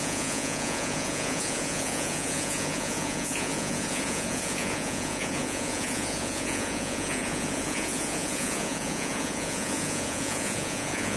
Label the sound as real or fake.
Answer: fake